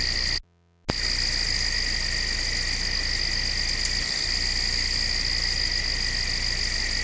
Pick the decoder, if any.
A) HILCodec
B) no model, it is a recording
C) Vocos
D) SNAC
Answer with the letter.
B